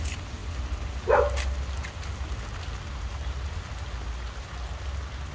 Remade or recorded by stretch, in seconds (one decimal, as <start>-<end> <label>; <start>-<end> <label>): 0.0-5.3 recorded